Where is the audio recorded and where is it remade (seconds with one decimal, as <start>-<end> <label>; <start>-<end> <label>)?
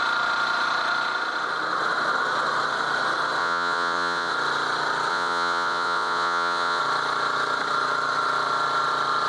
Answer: 0.0-3.4 recorded; 3.4-4.3 remade; 4.3-5.1 recorded; 5.1-6.8 remade; 6.8-9.3 recorded